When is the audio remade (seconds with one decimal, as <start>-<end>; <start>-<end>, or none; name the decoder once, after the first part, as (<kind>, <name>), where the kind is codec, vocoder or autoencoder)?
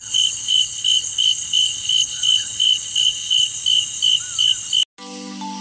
0.0-3.5 (codec, HILCodec)